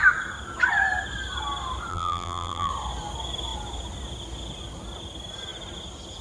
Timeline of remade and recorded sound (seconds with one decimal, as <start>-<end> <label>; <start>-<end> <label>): 0.0-1.9 recorded; 1.9-2.7 remade; 2.7-6.2 recorded